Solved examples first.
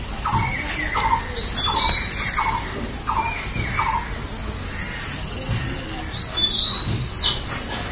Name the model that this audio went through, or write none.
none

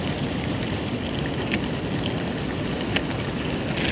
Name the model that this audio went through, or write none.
none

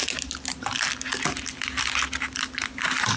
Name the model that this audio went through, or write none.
none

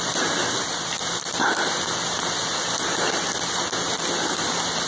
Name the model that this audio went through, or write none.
none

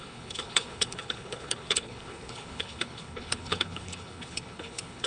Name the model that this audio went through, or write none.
codec, HILCodec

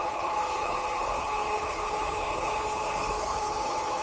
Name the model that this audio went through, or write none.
codec, HILCodec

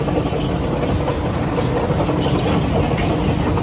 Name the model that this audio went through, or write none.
none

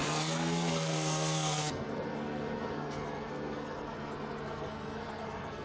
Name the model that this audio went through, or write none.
codec, SNAC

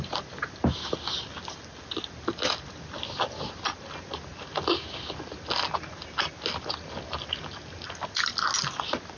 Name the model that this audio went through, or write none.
none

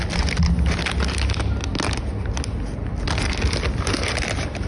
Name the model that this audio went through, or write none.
none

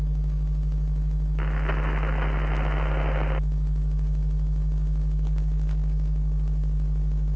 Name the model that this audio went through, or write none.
none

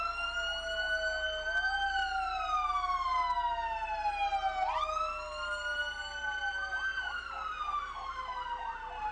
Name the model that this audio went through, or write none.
none